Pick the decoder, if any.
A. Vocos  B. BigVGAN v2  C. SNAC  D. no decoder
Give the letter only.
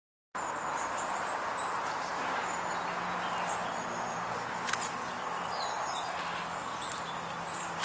D